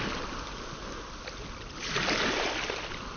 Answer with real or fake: real